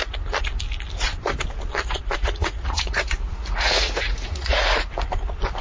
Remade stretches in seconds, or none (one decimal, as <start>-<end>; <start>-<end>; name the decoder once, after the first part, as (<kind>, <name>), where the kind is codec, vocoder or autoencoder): 2.0-4.9 (vocoder, Vocos)